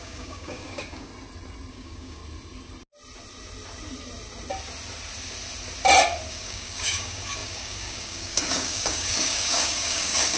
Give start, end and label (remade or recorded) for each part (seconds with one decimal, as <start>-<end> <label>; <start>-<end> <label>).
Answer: 0.0-1.1 remade; 1.1-1.7 recorded; 1.7-2.2 remade; 2.2-6.3 recorded; 6.3-10.4 remade